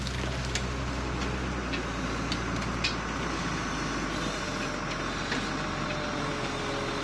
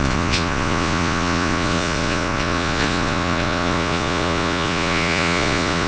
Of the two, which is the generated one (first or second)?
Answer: second